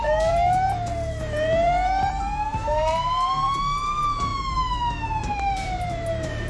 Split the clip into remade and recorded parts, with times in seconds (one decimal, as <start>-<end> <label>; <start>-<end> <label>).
0.0-2.5 recorded; 2.5-3.6 remade; 3.6-4.3 recorded; 4.3-6.5 remade